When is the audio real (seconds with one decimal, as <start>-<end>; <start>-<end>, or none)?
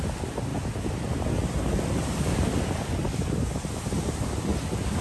0.0-5.0